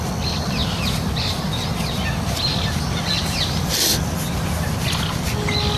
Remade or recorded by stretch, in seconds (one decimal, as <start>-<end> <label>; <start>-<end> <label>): 0.0-5.8 recorded